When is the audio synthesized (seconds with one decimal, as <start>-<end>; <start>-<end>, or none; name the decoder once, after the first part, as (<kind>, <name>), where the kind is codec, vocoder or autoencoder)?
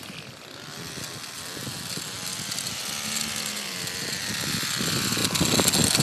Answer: none